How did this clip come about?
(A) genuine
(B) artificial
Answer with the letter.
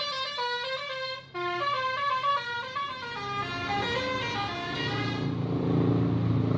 A